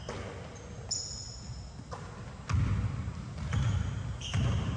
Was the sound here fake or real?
real